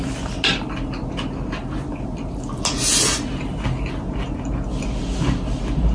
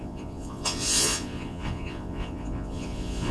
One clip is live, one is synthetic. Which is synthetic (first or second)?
second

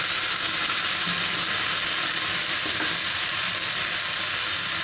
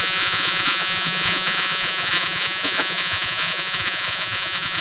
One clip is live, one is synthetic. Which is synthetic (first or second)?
second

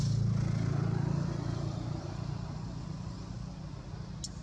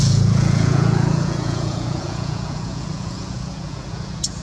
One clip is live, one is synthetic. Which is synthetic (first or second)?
second